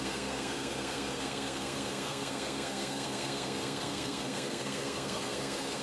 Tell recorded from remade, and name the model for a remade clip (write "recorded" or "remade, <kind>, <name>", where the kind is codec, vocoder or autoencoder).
remade, codec, SNAC